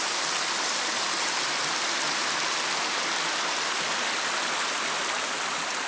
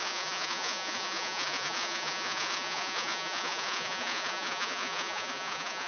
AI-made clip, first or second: second